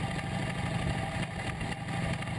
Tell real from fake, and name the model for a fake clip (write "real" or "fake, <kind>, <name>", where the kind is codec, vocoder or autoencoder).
real